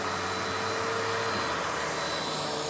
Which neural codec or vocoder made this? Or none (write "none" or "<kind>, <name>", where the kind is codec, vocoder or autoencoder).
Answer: none